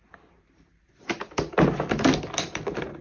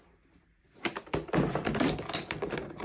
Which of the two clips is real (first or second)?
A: first